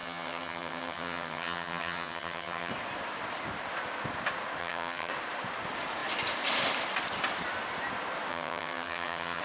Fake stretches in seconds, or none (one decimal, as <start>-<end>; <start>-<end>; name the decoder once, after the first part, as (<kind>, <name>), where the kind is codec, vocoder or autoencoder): 0.0-2.7 (vocoder, HiFi-GAN); 4.6-5.1; 8.3-9.4